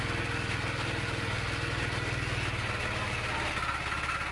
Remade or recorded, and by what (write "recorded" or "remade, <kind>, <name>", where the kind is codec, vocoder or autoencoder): recorded